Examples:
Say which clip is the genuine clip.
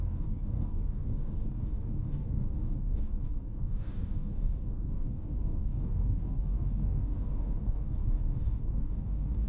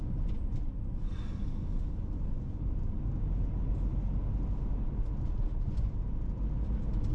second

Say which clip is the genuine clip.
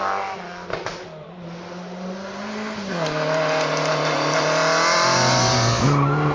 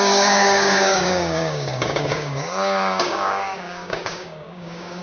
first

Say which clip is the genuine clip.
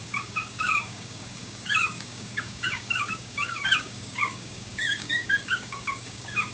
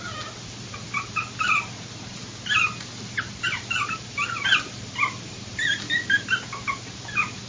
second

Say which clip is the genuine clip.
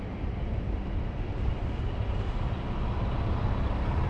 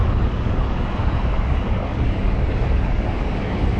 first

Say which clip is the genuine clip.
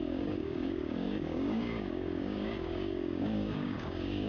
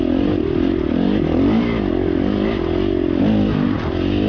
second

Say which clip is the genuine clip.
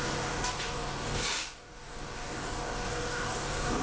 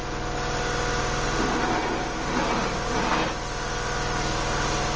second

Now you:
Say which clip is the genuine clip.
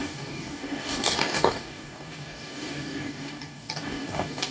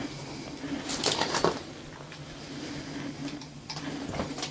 second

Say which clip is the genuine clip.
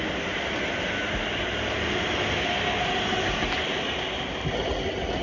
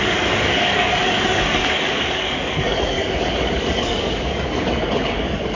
first